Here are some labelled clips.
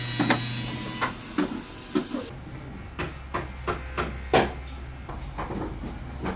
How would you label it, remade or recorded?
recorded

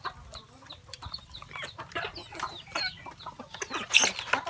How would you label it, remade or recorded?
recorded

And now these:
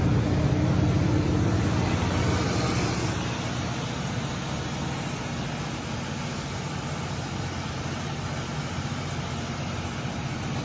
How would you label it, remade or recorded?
recorded